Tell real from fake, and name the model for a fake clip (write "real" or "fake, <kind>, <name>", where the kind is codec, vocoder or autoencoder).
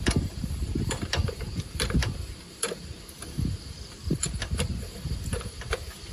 fake, vocoder, BigVGAN v2